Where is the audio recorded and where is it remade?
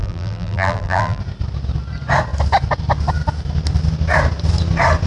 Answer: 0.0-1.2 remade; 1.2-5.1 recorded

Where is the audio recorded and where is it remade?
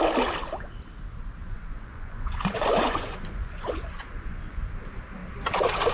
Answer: 0.0-1.4 recorded; 1.4-4.6 remade; 4.6-5.9 recorded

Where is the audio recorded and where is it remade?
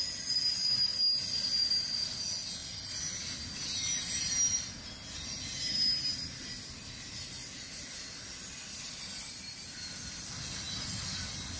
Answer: 0.0-11.6 recorded